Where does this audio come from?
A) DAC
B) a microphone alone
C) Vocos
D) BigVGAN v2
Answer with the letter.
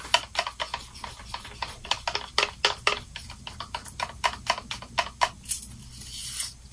B